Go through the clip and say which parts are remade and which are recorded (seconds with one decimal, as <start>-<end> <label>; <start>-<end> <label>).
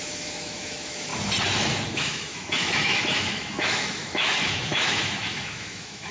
0.0-1.1 remade; 1.1-1.9 recorded; 1.9-6.1 remade